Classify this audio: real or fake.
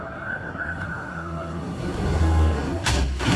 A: fake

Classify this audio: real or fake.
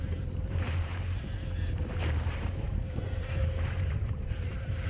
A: fake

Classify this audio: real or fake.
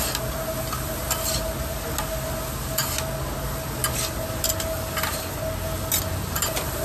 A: real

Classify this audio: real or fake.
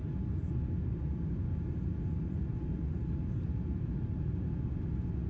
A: real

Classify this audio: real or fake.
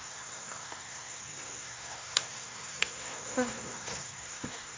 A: fake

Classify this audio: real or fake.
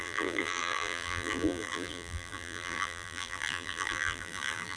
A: fake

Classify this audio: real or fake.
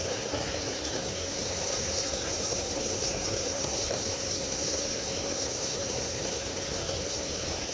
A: fake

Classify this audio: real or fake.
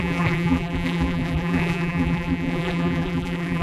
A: fake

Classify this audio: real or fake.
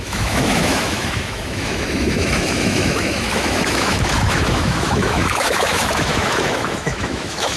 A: fake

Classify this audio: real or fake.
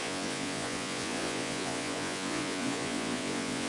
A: fake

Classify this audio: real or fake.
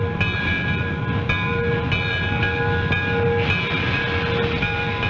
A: real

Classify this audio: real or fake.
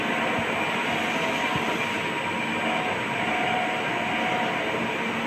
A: real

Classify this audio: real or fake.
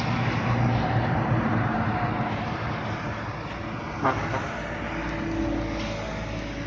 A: real